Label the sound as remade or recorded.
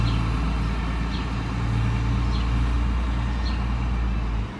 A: recorded